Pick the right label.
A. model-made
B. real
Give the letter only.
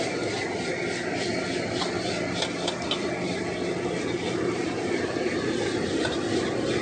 B